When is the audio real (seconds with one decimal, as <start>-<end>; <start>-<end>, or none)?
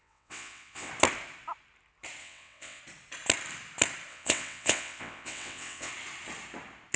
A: 0.9-2.2; 2.8-4.1; 5.9-7.0